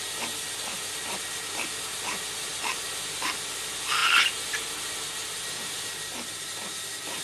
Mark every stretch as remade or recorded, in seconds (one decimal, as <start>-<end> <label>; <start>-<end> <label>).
0.0-7.2 recorded